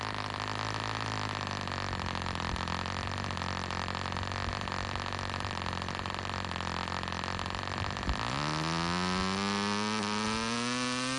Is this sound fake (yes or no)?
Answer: no